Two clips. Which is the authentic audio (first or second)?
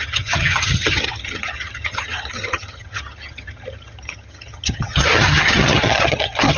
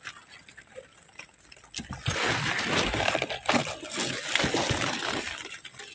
second